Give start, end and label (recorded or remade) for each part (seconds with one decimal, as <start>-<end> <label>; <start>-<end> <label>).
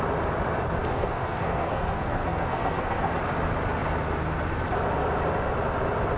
0.0-0.8 recorded; 0.8-3.1 remade; 3.1-6.2 recorded